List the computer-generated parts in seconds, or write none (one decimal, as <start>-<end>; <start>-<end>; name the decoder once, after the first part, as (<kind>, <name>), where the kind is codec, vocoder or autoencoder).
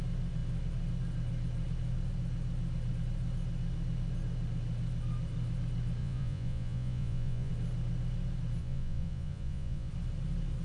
6.0-7.5 (vocoder, Vocos); 8.6-9.9